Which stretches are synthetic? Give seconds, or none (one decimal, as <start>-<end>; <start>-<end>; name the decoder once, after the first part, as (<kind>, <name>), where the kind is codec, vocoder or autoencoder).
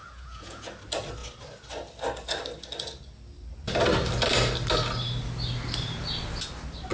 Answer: 0.0-0.7 (vocoder, Vocos)